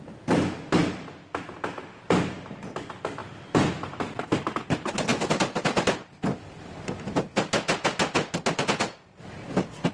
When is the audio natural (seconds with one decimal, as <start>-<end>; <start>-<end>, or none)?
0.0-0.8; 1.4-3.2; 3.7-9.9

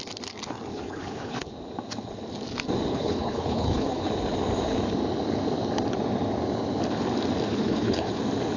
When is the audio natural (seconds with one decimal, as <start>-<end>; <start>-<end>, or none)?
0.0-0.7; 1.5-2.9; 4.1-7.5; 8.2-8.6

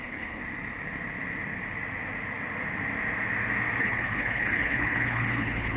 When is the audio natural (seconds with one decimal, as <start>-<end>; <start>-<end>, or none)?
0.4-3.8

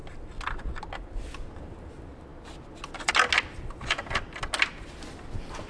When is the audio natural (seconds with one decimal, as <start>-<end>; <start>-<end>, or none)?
0.0-5.7

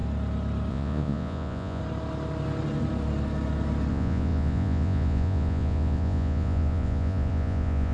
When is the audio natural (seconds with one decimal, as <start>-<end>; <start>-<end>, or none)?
0.0-0.7; 1.8-3.9